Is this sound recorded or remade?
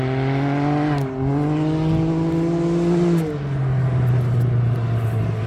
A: recorded